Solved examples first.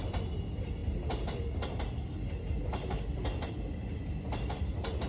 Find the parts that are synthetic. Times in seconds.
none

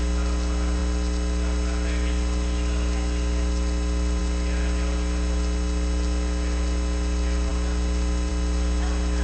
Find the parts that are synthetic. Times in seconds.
none

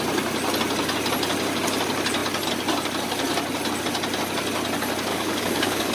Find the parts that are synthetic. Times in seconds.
5.1-5.9

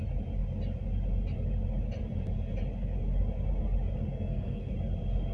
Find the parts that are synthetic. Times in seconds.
4.1-4.7

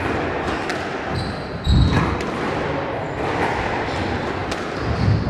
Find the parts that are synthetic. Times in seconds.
4.4-5.3

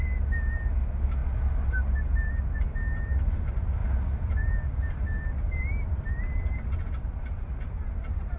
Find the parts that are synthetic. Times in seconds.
none

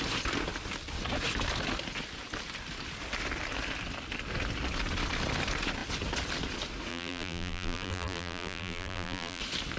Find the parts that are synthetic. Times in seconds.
6.9-9.4